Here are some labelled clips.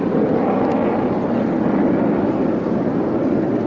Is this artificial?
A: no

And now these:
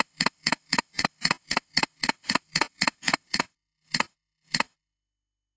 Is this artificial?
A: yes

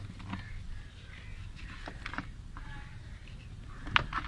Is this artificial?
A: no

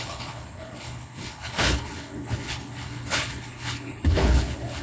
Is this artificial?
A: yes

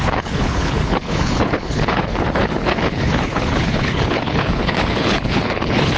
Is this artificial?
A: yes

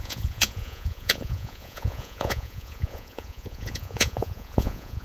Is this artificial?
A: yes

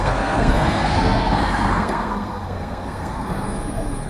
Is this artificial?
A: yes